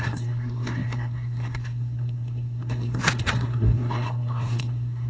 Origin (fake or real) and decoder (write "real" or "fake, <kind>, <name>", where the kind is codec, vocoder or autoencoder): fake, codec, SNAC